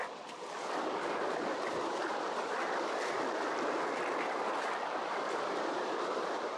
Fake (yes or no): yes